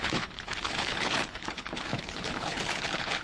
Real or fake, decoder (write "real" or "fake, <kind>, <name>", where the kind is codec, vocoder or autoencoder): fake, codec, HILCodec